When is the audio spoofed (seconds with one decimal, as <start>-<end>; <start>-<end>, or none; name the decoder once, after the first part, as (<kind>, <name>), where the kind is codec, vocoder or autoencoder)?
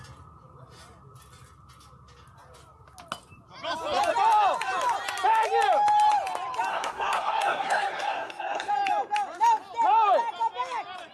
6.7-8.7 (codec, SNAC)